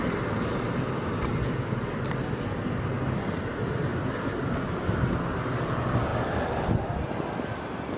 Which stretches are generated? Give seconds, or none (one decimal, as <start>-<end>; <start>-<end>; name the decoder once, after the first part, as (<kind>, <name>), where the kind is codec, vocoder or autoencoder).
none